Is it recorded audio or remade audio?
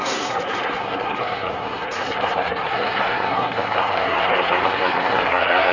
remade